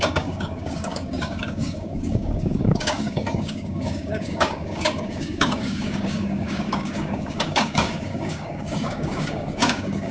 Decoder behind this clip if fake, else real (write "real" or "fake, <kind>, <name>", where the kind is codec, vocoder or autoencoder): fake, codec, DAC